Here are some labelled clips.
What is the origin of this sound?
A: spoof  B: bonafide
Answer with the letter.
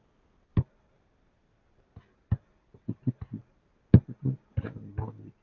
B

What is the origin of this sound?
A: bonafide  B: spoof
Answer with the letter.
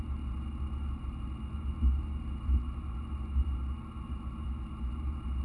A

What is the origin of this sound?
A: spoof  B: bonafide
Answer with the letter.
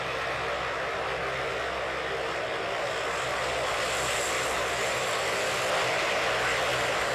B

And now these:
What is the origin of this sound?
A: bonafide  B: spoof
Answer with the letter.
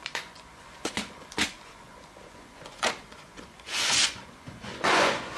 B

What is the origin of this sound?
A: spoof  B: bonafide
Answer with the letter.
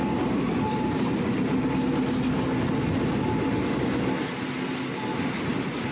B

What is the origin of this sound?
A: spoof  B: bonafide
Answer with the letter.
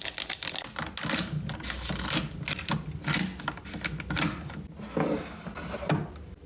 B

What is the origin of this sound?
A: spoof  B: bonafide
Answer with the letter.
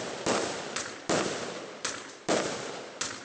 A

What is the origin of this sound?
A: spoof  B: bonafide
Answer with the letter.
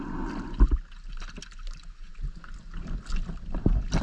B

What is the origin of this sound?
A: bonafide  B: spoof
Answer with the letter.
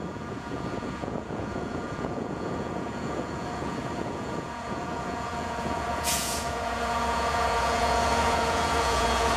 B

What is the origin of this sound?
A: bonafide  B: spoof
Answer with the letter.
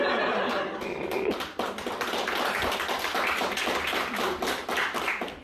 A